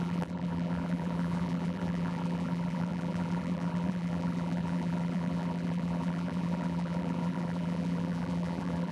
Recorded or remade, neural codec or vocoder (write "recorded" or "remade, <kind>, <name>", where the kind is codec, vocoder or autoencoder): remade, vocoder, BigVGAN v2